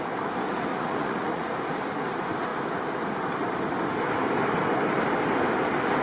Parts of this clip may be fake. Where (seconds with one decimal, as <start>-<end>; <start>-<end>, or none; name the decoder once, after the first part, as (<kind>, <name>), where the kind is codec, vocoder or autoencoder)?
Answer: 0.7-1.5 (vocoder, Vocos)